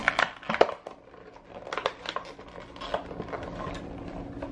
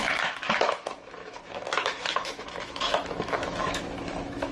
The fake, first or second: second